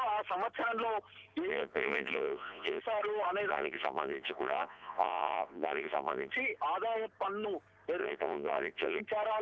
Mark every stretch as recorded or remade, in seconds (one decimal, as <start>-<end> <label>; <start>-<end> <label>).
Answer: 0.0-1.5 recorded; 1.5-2.8 remade; 2.8-3.5 recorded; 3.5-6.3 remade; 6.3-8.0 recorded; 8.0-9.0 remade; 9.0-9.4 recorded